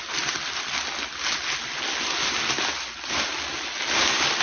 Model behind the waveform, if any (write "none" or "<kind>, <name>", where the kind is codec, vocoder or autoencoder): none